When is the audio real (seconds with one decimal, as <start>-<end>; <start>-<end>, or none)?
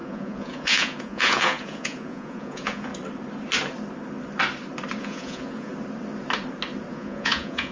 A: 2.9-5.0; 5.7-6.9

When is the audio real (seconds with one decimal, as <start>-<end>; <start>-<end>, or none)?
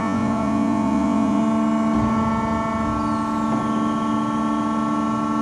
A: 1.4-5.4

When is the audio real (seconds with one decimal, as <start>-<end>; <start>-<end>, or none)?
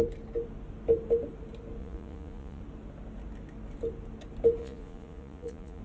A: 0.0-1.8; 2.6-4.6